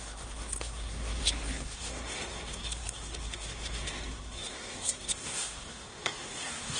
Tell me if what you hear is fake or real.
fake